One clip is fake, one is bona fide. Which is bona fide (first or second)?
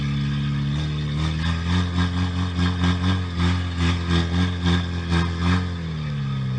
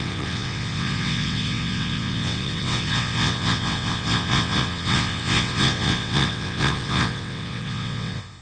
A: first